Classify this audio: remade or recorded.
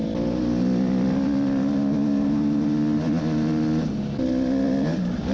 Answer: recorded